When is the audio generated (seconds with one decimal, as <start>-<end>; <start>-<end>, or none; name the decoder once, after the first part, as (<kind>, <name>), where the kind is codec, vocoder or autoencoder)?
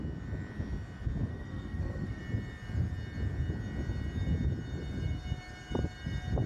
1.3-2.2 (codec, SNAC)